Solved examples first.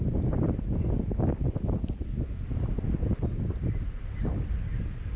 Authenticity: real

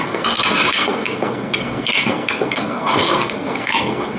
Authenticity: fake